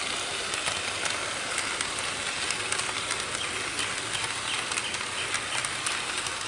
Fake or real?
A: real